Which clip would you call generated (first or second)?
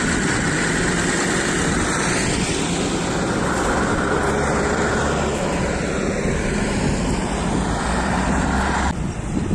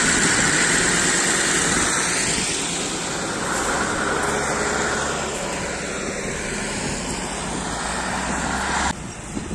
first